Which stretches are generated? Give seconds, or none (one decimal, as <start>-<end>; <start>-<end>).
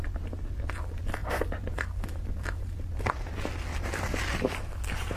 0.0-5.2